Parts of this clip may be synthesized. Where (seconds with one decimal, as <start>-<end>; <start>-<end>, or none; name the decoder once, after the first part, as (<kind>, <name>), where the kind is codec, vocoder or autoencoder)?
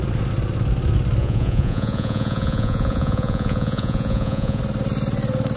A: 1.2-4.6 (vocoder, Vocos)